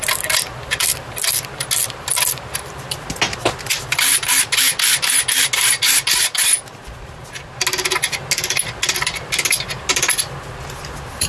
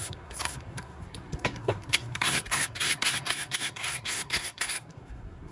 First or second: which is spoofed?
second